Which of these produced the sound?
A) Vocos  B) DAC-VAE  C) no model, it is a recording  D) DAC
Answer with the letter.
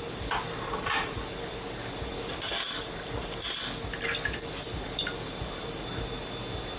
C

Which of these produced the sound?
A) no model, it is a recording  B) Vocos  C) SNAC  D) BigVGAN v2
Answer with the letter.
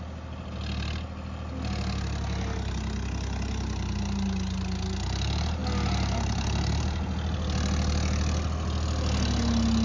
A